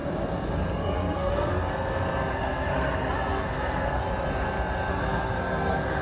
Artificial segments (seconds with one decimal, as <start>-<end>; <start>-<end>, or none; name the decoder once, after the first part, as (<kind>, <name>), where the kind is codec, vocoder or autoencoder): 0.7-1.3 (codec, SNAC); 2.3-4.0; 4.9-6.0

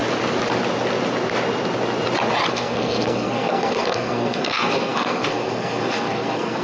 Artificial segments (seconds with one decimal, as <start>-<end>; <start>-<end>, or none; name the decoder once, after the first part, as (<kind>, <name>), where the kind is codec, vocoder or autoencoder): 2.5-6.6 (codec, SNAC)